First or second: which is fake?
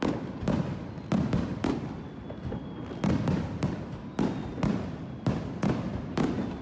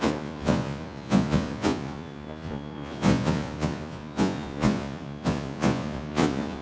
second